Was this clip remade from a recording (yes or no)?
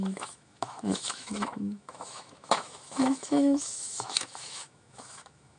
yes